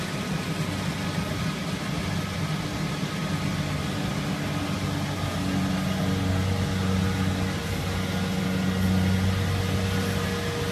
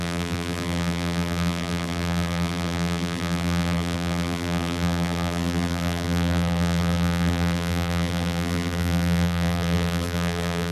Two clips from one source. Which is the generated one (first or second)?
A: second